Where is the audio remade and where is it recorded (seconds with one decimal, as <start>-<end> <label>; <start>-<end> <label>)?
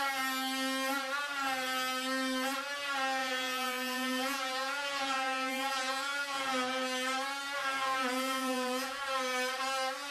0.0-3.2 recorded; 3.2-6.4 remade; 6.4-7.6 recorded; 7.6-9.0 remade; 9.0-10.1 recorded